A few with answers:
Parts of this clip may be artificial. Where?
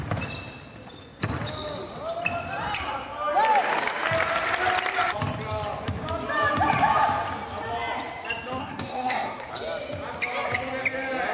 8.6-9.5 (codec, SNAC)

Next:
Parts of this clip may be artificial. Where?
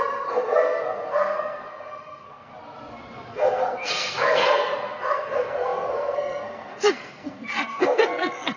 0.0-2.5 (codec, SNAC); 3.3-8.6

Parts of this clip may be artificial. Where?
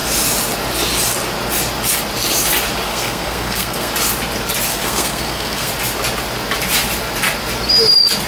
2.9-3.9 (codec, SNAC); 4.7-5.7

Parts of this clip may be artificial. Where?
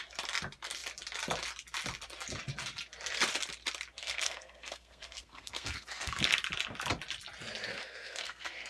4.0-6.2 (codec, SNAC); 7.7-8.7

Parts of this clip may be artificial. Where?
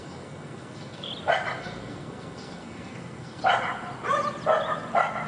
0.0-1.1 (codec, SNAC); 1.6-3.4